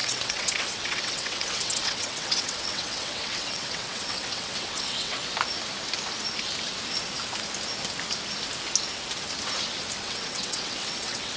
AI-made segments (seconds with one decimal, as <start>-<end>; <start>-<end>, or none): 0.0-5.2; 10.0-11.4